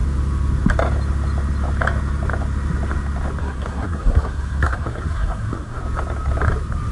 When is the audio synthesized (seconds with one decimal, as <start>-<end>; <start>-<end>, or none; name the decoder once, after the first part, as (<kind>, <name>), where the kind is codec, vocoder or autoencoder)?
3.4-5.8 (codec, SNAC)